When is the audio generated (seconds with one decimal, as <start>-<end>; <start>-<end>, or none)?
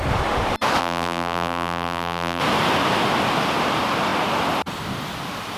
0.8-2.4